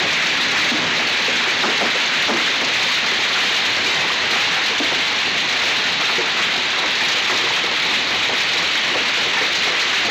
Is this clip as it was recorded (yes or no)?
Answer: yes